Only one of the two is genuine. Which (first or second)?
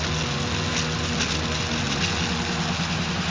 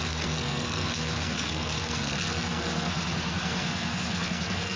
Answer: first